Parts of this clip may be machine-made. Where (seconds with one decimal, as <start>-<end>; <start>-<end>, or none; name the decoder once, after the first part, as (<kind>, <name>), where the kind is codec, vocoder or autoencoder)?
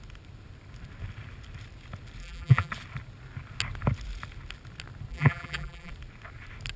2.2-2.7 (vocoder, BigVGAN v2); 5.1-5.9